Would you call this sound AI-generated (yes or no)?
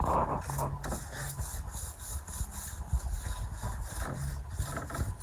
no